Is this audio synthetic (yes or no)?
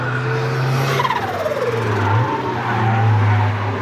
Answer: no